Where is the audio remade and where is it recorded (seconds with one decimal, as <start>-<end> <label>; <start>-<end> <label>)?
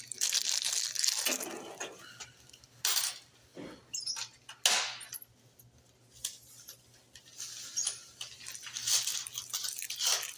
0.0-10.4 recorded